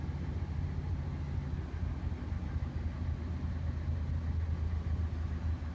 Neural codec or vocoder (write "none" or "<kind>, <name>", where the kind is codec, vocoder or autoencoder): none